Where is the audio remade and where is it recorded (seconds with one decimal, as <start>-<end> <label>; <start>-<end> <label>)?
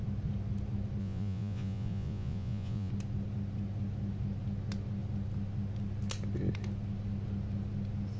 0.0-1.0 recorded; 1.0-2.9 remade; 2.9-8.2 recorded